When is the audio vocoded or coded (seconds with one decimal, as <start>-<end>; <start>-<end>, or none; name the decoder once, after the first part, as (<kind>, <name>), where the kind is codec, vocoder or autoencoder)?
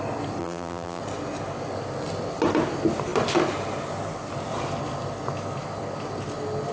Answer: 0.4-1.0 (vocoder, BigVGAN v2)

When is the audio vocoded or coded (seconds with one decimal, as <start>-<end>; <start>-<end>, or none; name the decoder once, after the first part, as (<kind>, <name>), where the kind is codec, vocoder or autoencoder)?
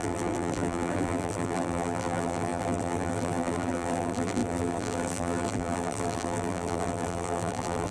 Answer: 0.0-7.9 (vocoder, BigVGAN v2)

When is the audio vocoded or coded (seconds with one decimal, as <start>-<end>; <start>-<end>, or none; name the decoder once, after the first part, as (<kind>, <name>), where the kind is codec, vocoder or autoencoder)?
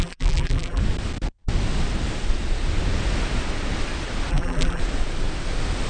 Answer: 0.0-0.8 (vocoder, BigVGAN v2); 4.3-4.8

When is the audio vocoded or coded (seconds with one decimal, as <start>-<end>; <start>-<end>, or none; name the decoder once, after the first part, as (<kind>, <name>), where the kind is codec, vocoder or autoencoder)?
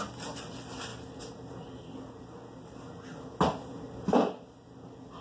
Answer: 0.0-0.9 (vocoder, BigVGAN v2); 4.0-5.2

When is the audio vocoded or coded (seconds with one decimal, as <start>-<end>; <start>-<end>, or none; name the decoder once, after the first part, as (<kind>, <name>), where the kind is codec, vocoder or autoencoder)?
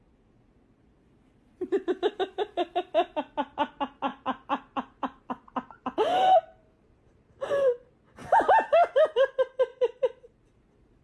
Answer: 4.1-7.5 (vocoder, BigVGAN v2); 9.7-11.0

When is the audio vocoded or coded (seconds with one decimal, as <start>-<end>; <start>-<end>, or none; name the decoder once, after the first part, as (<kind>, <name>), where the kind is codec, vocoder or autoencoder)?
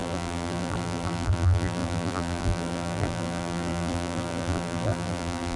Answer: 0.0-5.6 (vocoder, BigVGAN v2)